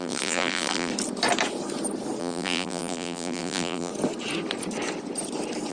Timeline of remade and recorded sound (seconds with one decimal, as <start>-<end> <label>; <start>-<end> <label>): 0.0-0.9 remade; 0.9-2.2 recorded; 2.2-3.9 remade; 3.9-5.7 recorded